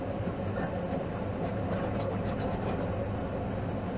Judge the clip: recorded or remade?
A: recorded